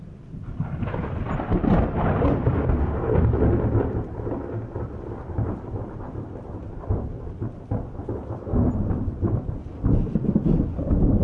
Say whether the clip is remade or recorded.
remade